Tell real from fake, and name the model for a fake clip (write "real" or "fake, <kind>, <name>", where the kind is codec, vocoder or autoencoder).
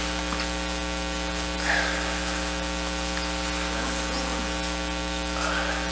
real